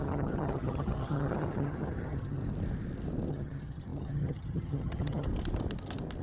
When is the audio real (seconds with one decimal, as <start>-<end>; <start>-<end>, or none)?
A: 2.4-3.3; 5.3-6.2